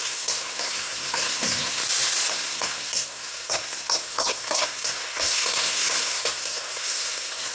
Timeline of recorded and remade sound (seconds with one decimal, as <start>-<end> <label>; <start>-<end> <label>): 0.0-1.8 remade; 1.8-2.3 recorded; 2.3-7.5 remade